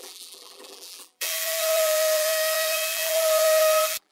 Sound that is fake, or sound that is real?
fake